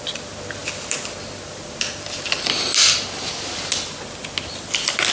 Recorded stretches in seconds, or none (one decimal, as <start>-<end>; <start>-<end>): 0.0-5.1